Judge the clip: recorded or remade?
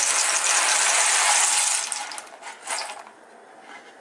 recorded